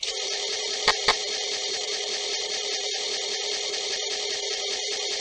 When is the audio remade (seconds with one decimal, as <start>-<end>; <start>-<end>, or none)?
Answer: 0.0-5.2